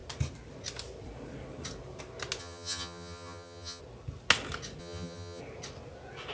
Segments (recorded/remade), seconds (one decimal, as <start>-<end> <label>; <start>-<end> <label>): 0.0-2.4 recorded; 2.4-3.8 remade; 3.8-4.8 recorded; 4.8-5.4 remade; 5.4-6.3 recorded